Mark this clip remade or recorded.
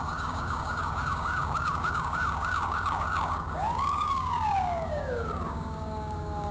remade